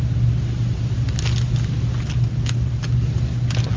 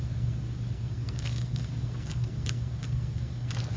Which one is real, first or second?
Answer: first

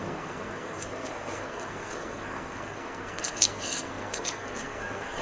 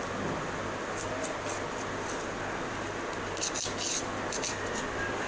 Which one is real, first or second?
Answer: second